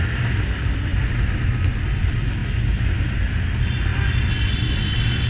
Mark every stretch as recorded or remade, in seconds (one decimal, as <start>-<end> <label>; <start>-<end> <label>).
0.0-5.3 recorded